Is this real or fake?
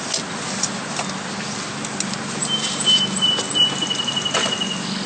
real